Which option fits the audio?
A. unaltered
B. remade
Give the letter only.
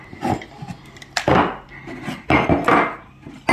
A